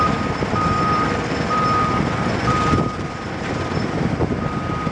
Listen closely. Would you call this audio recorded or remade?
remade